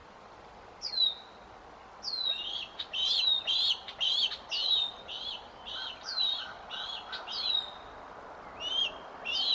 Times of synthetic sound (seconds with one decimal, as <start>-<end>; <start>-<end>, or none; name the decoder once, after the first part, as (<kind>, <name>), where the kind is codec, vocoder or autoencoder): none